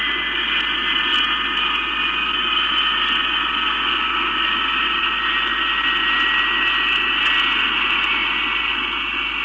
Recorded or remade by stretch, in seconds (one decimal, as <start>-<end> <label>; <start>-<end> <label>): 0.0-9.4 recorded